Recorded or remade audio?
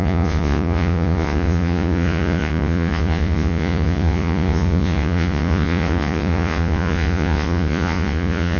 remade